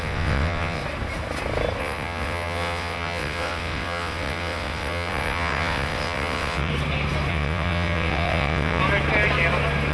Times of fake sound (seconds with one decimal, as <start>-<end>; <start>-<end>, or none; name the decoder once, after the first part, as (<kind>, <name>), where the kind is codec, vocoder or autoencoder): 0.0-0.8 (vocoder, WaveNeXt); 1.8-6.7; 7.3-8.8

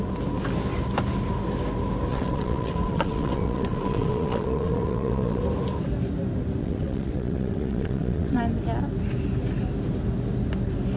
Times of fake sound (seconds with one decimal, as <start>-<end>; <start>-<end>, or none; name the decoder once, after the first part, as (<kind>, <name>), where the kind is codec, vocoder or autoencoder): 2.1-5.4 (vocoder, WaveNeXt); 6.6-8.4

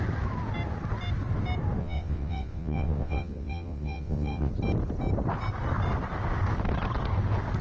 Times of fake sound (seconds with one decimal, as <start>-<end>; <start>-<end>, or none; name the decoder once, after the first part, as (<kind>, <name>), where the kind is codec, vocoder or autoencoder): 1.8-4.5 (vocoder, WaveNeXt)

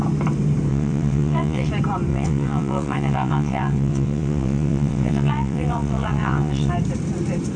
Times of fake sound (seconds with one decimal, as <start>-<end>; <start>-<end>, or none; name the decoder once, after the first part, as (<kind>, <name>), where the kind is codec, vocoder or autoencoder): 0.7-1.7 (vocoder, WaveNeXt); 2.1-6.7